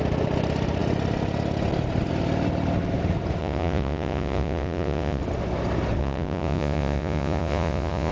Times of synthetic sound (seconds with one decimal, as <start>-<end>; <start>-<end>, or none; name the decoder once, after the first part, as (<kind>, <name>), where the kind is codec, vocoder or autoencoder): 3.4-5.2 (vocoder, Vocos); 6.0-8.1